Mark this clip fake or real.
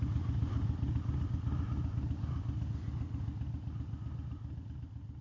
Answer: real